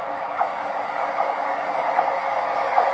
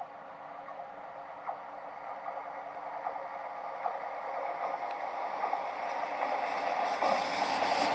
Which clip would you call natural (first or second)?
second